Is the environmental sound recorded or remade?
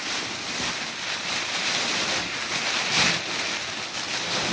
recorded